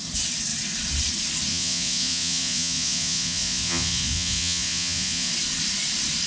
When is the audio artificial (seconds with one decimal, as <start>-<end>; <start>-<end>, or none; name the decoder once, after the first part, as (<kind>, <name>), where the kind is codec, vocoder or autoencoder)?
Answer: 1.5-5.3 (vocoder, Vocos)